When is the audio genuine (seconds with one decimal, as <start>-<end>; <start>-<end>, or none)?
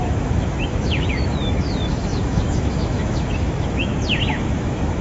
3.9-4.4